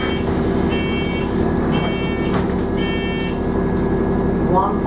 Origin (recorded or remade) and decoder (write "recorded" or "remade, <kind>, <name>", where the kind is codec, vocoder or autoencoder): recorded